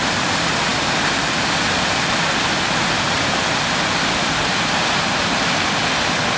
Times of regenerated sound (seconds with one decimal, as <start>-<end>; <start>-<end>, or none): none